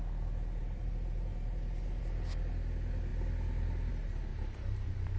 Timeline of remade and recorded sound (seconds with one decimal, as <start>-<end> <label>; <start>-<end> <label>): 0.0-0.6 recorded; 0.6-2.0 remade; 2.0-4.3 recorded; 4.3-5.2 remade